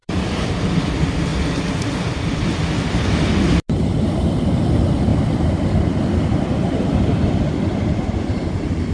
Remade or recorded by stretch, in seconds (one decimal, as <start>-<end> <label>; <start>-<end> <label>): 0.0-0.5 remade; 0.5-1.3 recorded; 1.3-2.6 remade; 2.6-5.1 recorded; 5.1-7.2 remade; 7.2-8.9 recorded